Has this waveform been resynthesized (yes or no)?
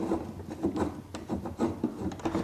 no